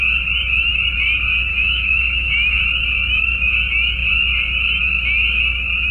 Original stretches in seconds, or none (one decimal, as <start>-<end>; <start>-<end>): 0.0-1.5; 2.6-5.9